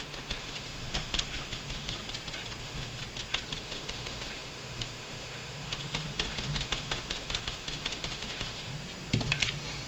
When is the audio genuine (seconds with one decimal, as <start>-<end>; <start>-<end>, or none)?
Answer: 2.0-2.6; 3.0-3.6; 8.7-9.9